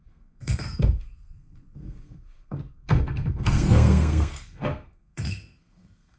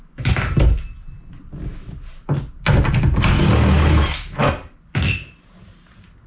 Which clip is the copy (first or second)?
first